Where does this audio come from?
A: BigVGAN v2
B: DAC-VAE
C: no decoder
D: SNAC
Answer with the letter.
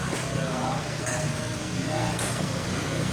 D